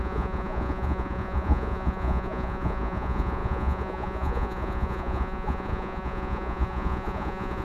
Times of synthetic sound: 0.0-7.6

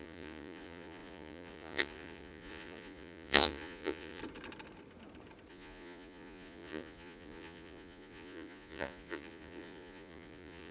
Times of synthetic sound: 0.0-4.2; 5.5-10.7